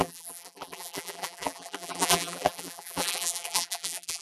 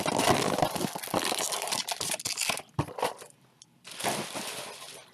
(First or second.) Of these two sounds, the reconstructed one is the first